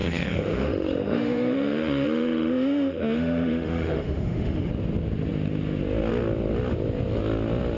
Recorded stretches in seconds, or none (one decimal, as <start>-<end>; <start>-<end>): 4.7-7.8